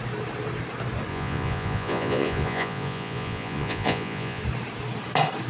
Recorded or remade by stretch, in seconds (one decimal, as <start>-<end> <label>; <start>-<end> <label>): 0.0-1.1 recorded; 1.1-4.4 remade; 4.4-5.5 recorded